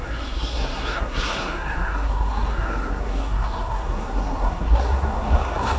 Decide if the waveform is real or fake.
fake